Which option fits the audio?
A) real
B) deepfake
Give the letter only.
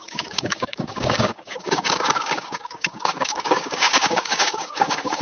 B